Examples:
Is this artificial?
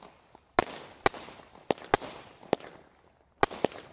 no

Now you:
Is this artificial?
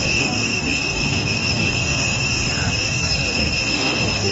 yes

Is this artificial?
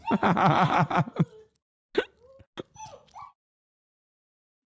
no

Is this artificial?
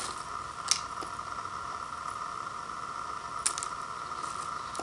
no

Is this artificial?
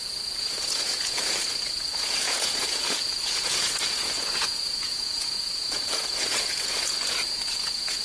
yes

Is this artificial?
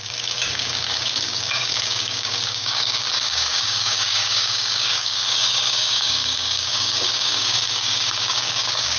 yes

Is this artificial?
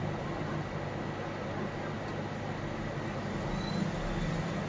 no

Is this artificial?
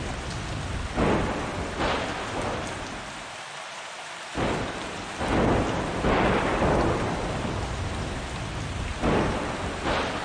no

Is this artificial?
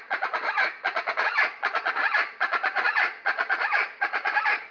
yes